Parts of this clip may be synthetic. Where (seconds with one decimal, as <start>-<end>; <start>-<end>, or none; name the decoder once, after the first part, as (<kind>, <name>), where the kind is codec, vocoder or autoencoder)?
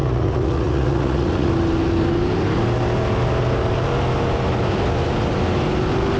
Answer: 0.0-1.5 (vocoder, Vocos)